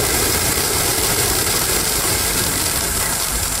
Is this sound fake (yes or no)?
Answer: yes